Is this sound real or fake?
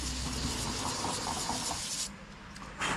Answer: real